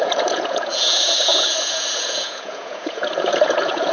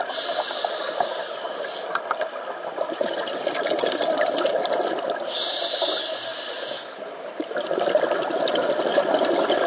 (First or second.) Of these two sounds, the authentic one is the second